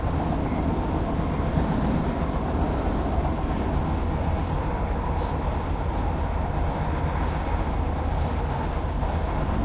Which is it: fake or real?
real